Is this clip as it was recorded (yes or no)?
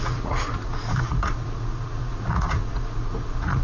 no